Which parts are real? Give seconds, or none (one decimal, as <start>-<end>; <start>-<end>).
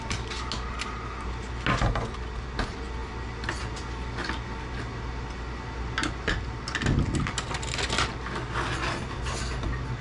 0.0-10.0